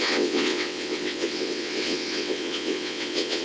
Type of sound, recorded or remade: remade